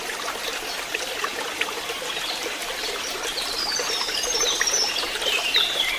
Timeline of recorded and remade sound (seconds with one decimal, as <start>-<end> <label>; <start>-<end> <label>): 0.0-6.0 recorded